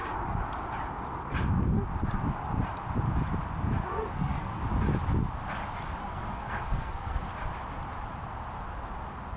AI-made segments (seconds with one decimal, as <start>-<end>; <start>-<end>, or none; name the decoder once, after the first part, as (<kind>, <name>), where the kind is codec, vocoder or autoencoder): 3.9-4.6 (codec, SNAC); 6.0-7.2

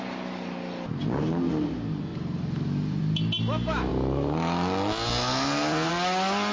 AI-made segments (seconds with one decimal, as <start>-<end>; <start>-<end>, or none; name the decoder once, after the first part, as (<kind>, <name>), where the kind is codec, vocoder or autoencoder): 2.1-3.0 (vocoder, BigVGAN v2)

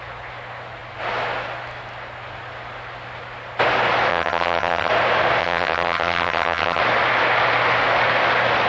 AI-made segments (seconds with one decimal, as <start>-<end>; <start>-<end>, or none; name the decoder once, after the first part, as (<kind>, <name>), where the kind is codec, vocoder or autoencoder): 4.1-4.9 (vocoder, HiFi-GAN); 5.4-6.8

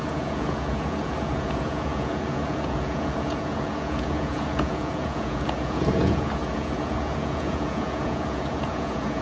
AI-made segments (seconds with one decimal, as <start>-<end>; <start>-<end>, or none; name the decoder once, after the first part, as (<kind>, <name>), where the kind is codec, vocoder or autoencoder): 0.0-9.2 (vocoder, Vocos)

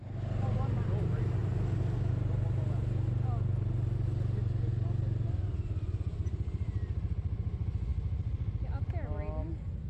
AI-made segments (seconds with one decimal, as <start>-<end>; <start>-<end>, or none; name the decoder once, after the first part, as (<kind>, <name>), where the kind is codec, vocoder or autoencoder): none

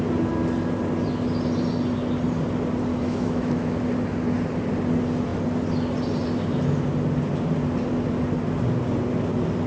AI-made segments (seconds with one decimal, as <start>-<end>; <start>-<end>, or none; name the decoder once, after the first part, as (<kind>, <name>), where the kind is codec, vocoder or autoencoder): 2.9-3.8 (autoencoder, DAC-VAE)

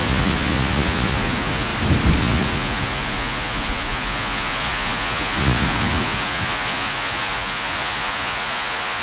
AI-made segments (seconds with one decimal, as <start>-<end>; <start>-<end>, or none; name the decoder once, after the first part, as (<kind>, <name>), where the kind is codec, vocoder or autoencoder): 0.0-1.7 (vocoder, Vocos); 2.2-9.0

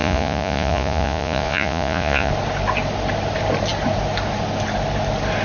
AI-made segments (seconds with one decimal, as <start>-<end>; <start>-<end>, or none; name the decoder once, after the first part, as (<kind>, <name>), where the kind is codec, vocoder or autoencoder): 0.0-2.3 (vocoder, Vocos)